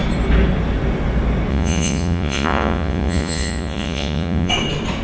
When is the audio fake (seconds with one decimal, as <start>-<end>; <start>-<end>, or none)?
1.5-4.5